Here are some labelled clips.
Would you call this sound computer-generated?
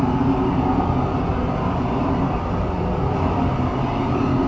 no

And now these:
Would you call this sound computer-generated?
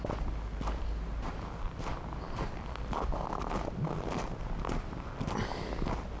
no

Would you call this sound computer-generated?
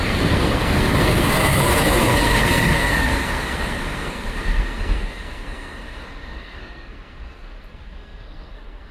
yes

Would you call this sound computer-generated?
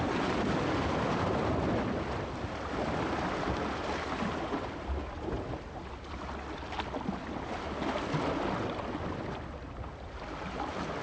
no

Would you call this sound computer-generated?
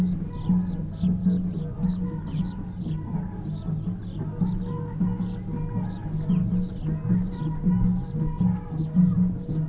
no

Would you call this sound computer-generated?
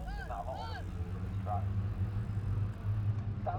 no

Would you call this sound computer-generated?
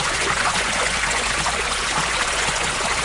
yes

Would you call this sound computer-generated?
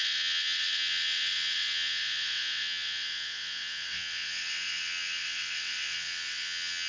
yes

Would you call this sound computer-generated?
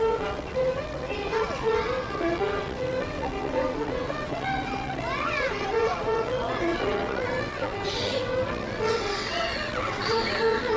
yes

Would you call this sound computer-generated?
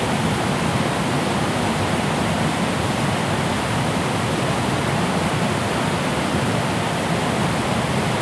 no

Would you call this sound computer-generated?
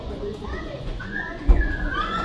yes